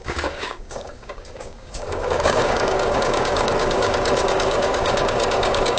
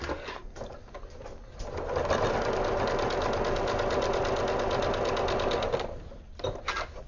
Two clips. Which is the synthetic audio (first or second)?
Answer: first